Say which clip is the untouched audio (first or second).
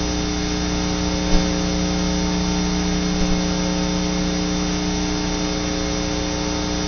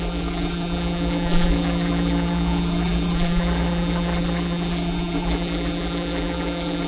first